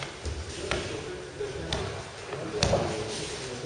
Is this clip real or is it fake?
real